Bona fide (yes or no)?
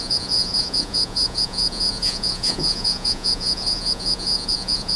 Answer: no